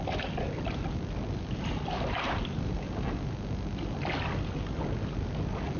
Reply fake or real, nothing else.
real